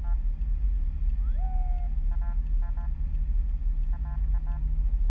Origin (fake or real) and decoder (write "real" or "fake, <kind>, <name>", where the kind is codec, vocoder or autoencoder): real